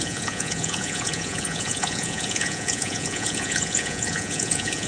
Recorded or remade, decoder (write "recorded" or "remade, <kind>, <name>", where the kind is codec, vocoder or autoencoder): remade, vocoder, Vocos